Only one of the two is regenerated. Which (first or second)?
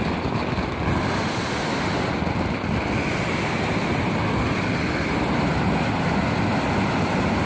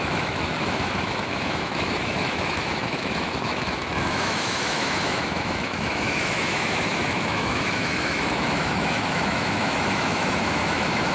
second